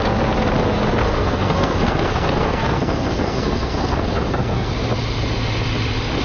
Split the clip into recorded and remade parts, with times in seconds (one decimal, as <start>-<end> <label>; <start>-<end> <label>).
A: 0.0-1.0 recorded; 1.0-4.7 remade; 4.7-6.2 recorded